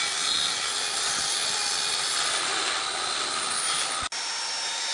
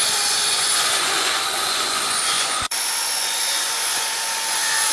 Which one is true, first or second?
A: first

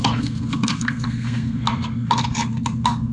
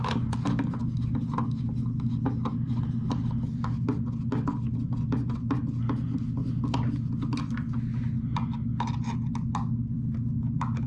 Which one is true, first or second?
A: second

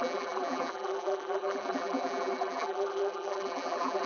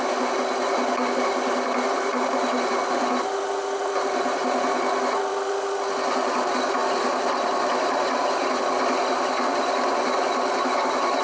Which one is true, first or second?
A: second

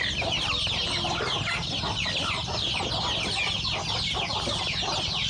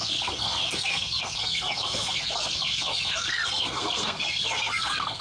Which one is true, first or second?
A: first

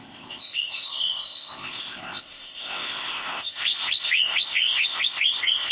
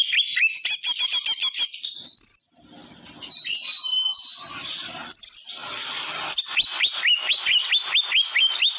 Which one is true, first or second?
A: second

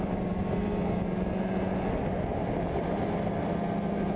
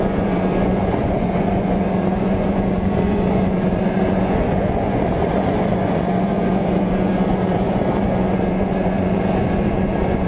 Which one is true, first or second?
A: first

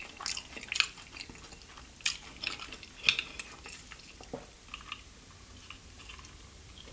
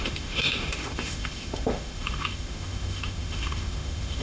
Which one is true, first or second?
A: first